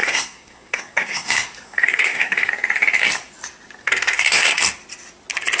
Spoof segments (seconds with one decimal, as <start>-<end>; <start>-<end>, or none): 0.0-2.5; 3.8-4.6